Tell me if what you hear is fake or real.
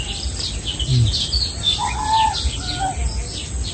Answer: real